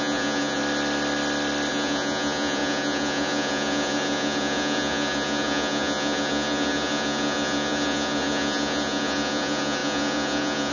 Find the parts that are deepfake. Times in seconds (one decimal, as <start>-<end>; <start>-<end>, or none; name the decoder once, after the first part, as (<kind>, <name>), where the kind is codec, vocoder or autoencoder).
0.0-0.6 (vocoder, Vocos); 1.7-10.7